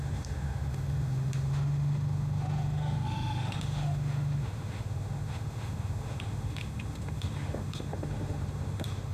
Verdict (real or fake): fake